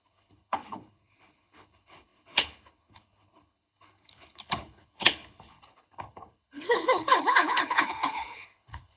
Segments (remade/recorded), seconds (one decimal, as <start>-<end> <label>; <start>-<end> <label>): 0.0-9.0 remade